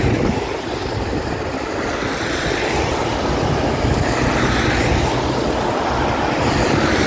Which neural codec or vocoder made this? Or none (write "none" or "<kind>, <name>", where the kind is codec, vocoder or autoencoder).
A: none